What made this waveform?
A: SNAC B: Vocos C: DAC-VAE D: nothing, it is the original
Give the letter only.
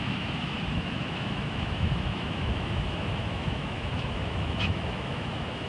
C